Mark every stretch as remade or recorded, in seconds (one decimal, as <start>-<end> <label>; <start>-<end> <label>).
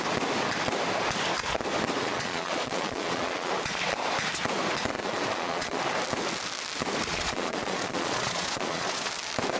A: 0.0-2.0 recorded; 2.0-3.5 remade; 3.5-5.0 recorded; 5.0-5.8 remade; 5.8-7.1 recorded; 7.1-9.1 remade; 9.1-9.6 recorded